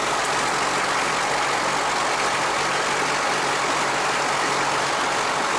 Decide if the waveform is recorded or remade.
recorded